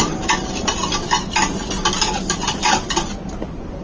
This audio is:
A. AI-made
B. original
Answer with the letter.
B